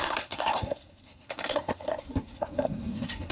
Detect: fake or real fake